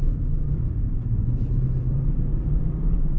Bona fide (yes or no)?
no